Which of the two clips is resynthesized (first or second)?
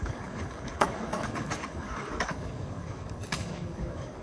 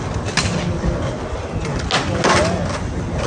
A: first